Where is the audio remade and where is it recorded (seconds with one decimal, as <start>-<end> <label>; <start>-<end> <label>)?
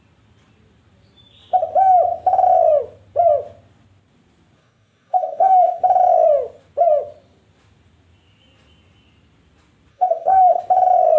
0.0-4.6 recorded; 4.6-5.8 remade; 5.8-9.9 recorded; 9.9-10.6 remade; 10.6-11.2 recorded